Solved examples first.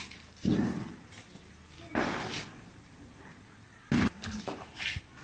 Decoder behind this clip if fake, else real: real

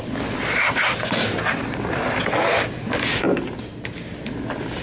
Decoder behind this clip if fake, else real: real